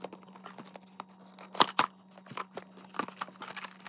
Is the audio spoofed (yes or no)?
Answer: no